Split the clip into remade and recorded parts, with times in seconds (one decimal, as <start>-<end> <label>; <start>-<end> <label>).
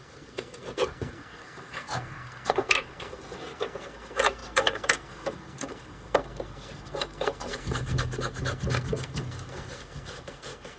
0.0-10.8 remade